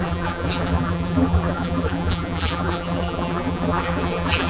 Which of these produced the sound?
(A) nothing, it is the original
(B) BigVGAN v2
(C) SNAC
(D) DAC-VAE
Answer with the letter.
B